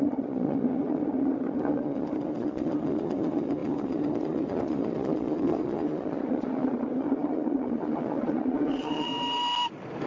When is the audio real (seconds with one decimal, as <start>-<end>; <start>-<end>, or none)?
9.1-10.1